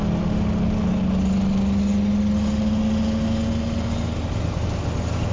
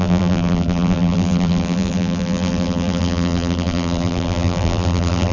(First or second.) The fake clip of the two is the second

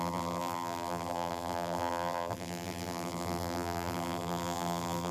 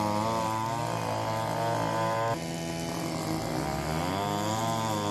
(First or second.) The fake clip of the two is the first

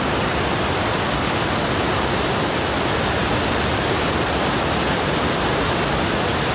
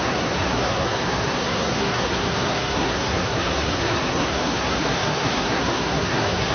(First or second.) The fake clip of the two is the second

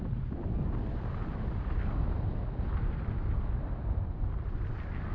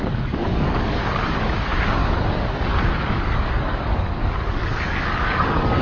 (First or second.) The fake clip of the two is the second